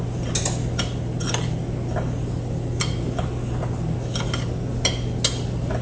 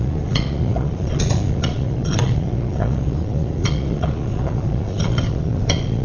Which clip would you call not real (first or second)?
second